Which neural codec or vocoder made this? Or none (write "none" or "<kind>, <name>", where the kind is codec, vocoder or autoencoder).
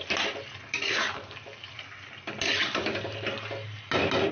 none